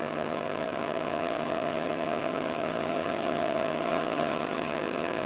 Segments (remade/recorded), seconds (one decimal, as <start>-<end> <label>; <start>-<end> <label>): 0.0-5.3 remade